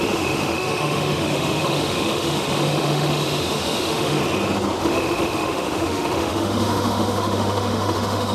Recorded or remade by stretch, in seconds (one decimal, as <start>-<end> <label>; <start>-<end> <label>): 0.0-4.2 remade; 4.2-4.8 recorded; 4.8-8.3 remade